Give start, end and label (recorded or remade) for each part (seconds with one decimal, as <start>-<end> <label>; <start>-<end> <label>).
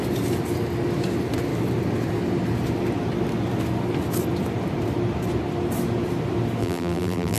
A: 0.0-6.6 recorded; 6.6-7.4 remade